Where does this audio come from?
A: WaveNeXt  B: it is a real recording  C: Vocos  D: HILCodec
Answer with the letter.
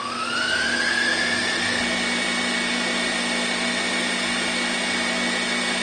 B